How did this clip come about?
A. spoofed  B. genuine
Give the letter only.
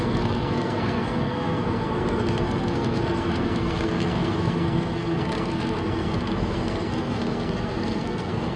A